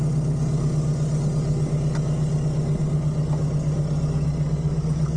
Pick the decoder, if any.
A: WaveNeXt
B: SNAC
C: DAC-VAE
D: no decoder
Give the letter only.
D